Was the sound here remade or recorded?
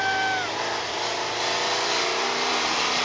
recorded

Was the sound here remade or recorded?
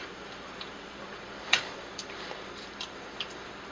remade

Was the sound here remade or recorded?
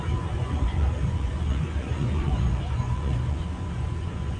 remade